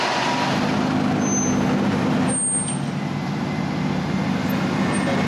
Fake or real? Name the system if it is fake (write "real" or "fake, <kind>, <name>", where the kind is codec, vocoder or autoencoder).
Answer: real